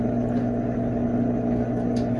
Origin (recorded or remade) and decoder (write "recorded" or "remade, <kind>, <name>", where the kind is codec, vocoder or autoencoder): recorded